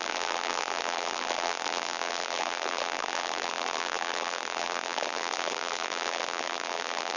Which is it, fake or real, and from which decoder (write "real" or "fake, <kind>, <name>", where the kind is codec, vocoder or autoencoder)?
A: fake, vocoder, BigVGAN v2